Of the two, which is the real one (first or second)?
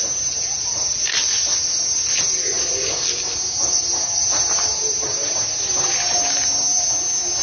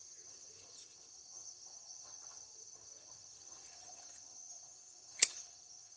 first